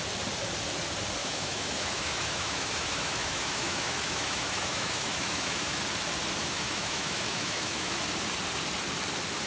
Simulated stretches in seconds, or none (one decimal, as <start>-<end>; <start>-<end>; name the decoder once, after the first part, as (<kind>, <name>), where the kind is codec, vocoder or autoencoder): 1.2-5.8 (autoencoder, DAC-VAE); 6.4-8.0